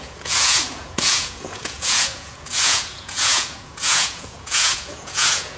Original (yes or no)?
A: no